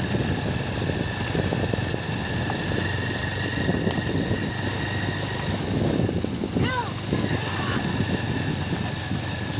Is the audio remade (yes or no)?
no